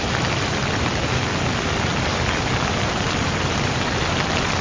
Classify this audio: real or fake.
real